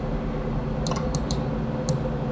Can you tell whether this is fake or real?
real